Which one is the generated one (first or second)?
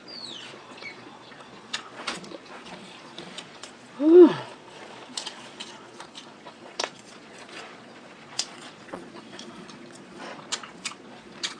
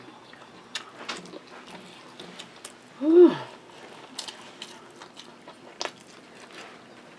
first